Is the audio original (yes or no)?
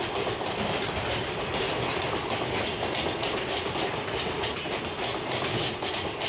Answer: yes